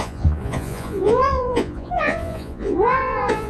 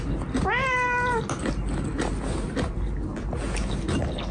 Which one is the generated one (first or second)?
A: first